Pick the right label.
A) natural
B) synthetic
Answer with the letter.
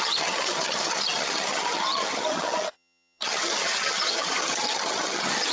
B